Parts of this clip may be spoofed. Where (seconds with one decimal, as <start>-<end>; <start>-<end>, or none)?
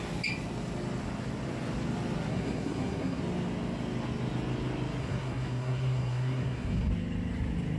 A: 2.3-3.2; 5.0-6.9